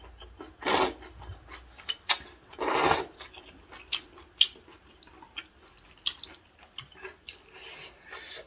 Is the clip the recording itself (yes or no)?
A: yes